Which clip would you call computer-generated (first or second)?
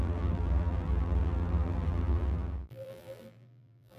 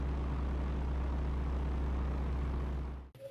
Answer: first